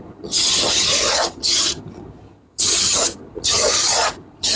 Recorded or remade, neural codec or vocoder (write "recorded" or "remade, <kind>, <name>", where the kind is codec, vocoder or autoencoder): remade, vocoder, HiFi-GAN